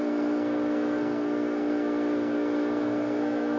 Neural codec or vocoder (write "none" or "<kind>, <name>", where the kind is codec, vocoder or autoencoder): codec, SNAC